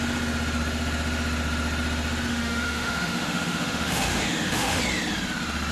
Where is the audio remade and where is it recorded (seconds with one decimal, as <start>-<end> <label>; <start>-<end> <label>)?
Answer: 0.0-2.3 recorded; 2.3-4.8 remade; 4.8-5.7 recorded